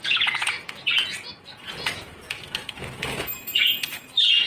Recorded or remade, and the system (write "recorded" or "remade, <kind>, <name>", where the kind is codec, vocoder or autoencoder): remade, vocoder, Vocos